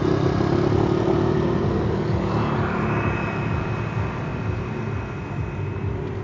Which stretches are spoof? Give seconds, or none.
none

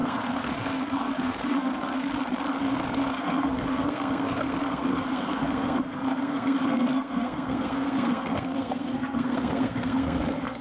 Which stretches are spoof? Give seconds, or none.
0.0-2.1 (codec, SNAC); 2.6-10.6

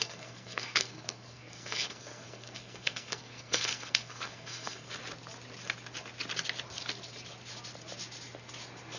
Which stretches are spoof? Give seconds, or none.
0.0-5.0 (codec, SNAC)

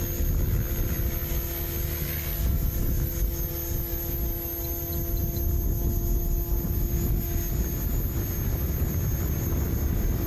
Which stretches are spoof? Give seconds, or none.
none

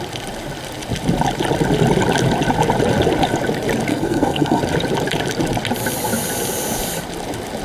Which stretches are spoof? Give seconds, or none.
3.9-4.6 (codec, SNAC)

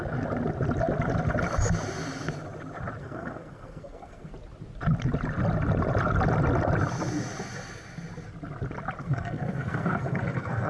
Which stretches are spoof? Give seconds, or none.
3.0-4.3 (codec, SNAC); 9.0-10.7

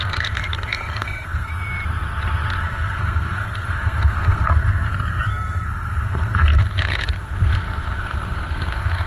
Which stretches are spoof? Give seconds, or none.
0.0-1.5 (codec, SNAC); 2.6-9.1